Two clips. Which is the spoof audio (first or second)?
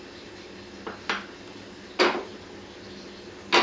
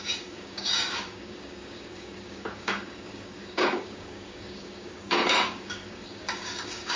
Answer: second